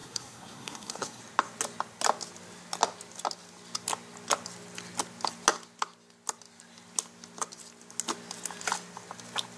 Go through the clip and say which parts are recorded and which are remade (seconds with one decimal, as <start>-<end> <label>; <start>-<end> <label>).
0.0-1.2 remade; 1.2-9.6 recorded